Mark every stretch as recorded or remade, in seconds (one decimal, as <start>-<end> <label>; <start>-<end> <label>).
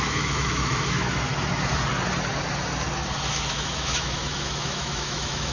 0.0-1.3 remade; 1.3-3.3 recorded; 3.3-5.5 remade